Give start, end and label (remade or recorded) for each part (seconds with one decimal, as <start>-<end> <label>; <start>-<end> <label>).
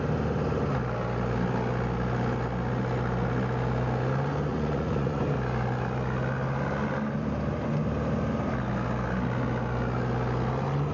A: 0.0-4.5 recorded; 4.5-5.2 remade; 5.2-10.9 recorded